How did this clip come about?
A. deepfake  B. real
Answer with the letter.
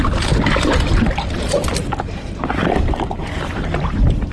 A